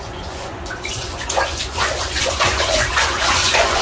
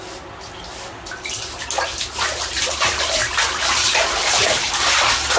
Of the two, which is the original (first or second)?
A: second